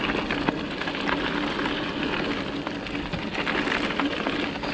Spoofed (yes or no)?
no